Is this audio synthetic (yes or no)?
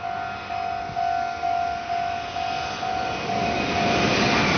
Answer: no